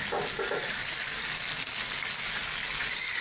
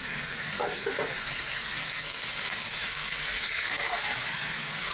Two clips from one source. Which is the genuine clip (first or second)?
first